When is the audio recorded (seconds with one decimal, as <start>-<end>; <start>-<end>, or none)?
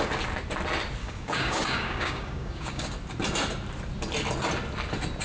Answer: 0.0-1.0; 2.9-5.2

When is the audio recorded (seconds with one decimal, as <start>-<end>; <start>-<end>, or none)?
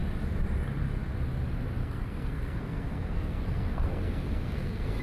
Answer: 0.0-1.8